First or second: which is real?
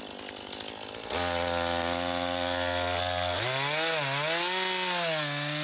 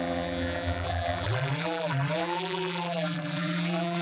first